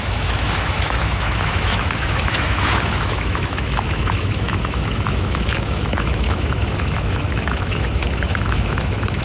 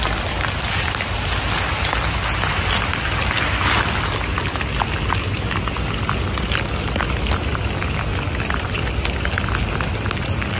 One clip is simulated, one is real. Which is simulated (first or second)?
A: first